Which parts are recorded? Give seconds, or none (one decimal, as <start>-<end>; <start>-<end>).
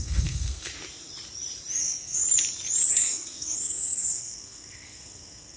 0.7-1.8; 2.2-2.9